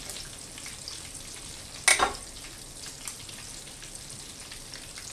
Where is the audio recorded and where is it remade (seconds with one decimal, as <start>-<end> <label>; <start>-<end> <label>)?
0.0-5.1 recorded